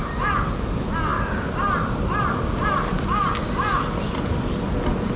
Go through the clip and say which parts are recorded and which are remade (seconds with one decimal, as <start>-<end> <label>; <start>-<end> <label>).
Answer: 0.0-5.2 recorded